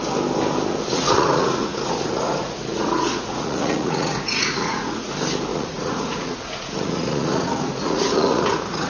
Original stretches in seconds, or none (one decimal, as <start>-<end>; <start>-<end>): 0.0-0.7; 5.1-5.5